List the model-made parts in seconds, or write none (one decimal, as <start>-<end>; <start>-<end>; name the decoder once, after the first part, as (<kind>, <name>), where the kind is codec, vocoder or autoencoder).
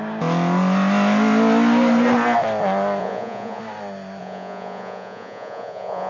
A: 3.0-3.6 (vocoder, Vocos); 4.2-6.1